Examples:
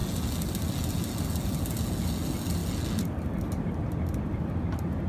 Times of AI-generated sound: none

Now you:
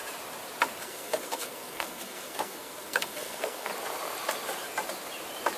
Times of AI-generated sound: 0.8-3.7 (codec, SNAC)

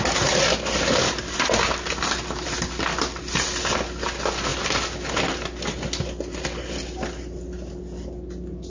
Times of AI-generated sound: none

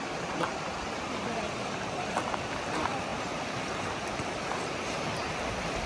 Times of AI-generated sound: 0.5-2.5 (vocoder, BigVGAN v2); 4.5-5.3

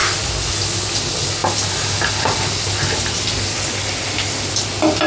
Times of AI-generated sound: none

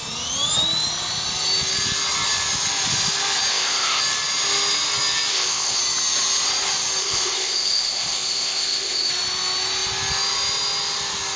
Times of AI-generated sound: 3.5-4.0 (codec, ZipCodec); 5.3-5.8; 7.0-9.1

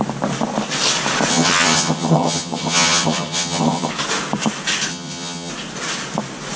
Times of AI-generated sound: 1.3-3.9 (vocoder, HiFi-GAN); 4.9-5.5